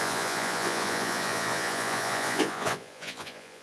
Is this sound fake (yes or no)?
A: yes